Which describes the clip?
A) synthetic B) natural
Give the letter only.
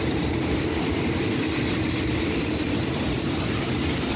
B